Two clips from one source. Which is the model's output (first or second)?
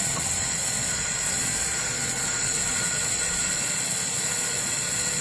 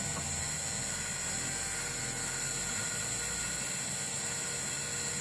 first